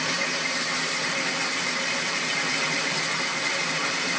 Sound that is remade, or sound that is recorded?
remade